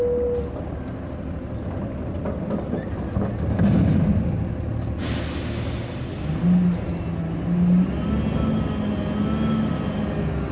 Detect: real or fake real